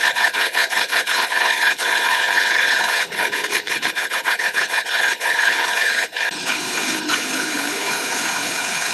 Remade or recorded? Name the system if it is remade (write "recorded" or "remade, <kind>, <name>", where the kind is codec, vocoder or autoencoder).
remade, codec, HILCodec